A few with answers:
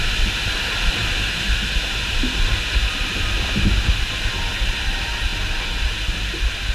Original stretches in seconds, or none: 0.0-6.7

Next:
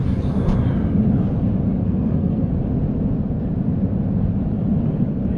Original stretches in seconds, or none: 0.0-1.8; 2.5-5.4

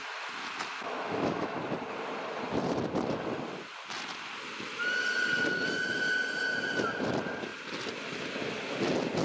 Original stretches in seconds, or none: 0.0-0.7; 1.6-9.2

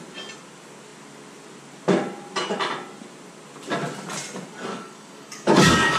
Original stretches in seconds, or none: 0.0-4.7